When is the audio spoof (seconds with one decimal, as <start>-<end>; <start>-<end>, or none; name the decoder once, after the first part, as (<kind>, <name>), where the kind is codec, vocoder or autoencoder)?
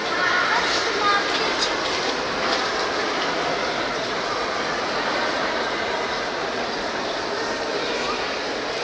3.6-6.7 (vocoder, Vocos)